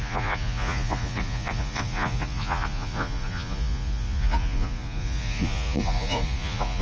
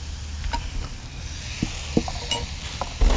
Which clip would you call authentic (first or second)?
second